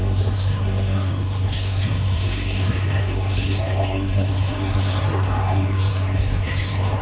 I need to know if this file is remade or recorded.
remade